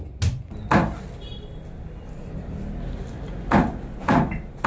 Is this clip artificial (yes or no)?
no